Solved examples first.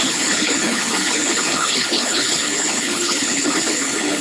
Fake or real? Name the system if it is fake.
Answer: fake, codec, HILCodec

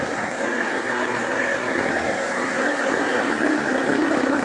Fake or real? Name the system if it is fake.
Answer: fake, codec, SNAC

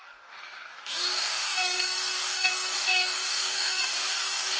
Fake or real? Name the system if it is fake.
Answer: fake, codec, DAC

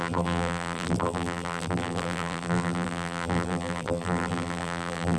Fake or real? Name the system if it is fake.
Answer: fake, vocoder, BigVGAN v2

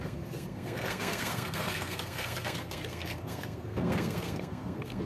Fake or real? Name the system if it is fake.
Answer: fake, codec, SNAC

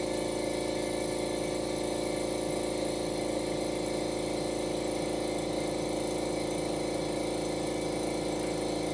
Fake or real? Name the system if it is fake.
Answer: real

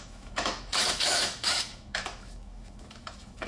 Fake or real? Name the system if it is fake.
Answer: fake, autoencoder, DAC-VAE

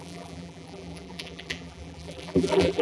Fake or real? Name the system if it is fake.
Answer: fake, vocoder, BigVGAN v2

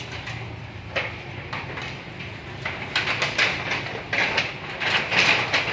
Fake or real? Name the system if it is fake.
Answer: real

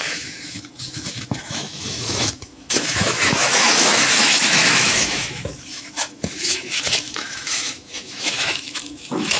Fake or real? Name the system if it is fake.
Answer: fake, autoencoder, DAC-VAE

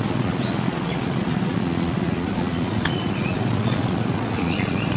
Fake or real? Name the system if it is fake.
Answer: fake, vocoder, Vocos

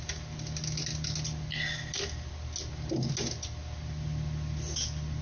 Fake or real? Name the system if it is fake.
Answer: real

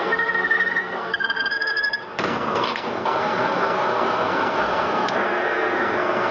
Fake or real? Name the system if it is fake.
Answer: fake, codec, SNAC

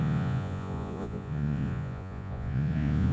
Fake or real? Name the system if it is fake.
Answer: fake, vocoder, Vocos